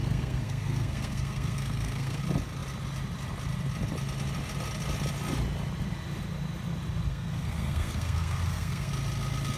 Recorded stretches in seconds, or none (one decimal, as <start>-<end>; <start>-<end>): 2.2-7.1; 8.9-9.6